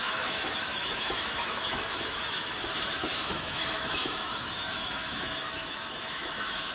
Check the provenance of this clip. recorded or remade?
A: remade